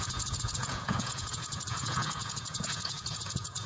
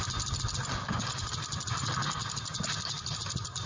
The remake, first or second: first